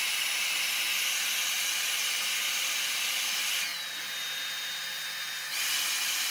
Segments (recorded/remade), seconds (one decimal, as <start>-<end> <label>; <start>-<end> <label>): 0.0-6.3 recorded